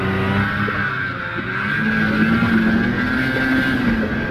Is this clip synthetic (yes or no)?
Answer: no